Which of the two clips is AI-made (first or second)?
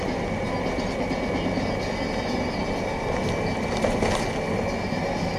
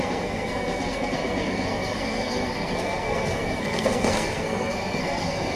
second